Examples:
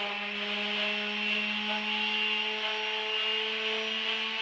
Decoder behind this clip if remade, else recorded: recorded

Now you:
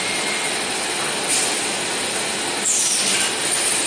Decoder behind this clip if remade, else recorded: recorded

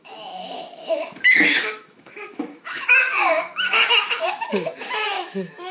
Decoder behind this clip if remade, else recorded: remade, autoencoder, DAC-VAE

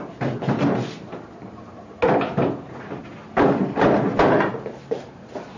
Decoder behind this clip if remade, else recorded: recorded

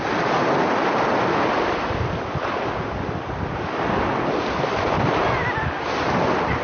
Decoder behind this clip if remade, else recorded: recorded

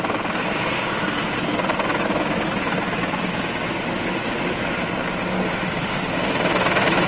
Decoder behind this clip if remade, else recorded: recorded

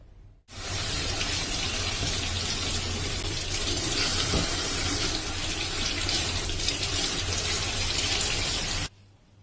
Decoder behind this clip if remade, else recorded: recorded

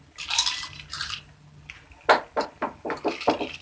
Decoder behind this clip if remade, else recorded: recorded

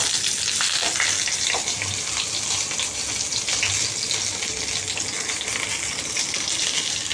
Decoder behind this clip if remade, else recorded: recorded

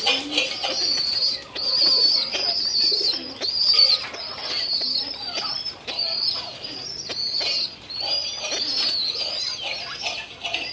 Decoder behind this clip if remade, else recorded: recorded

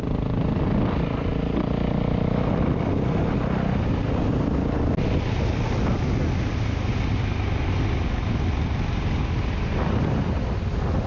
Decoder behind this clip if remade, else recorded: recorded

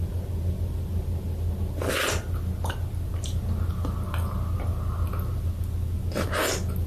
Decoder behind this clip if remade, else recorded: recorded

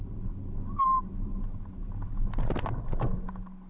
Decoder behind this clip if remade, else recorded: recorded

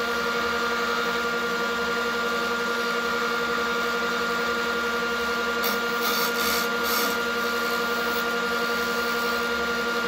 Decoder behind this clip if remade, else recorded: recorded